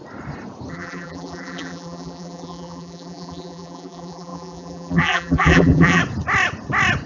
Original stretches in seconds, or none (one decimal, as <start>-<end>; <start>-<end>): 0.0-0.7; 6.0-7.1